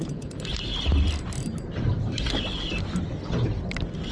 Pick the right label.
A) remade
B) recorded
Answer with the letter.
B